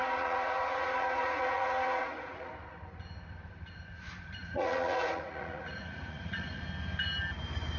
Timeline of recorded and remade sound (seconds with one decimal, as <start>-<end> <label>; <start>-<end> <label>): 0.0-2.5 remade; 2.5-4.4 recorded; 4.4-6.6 remade; 6.6-7.8 recorded